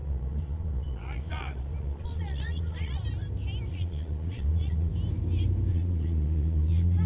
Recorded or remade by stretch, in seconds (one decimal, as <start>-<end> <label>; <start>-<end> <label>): 0.0-3.0 remade; 3.0-3.7 recorded; 3.7-4.9 remade; 4.9-5.7 recorded; 5.7-7.1 remade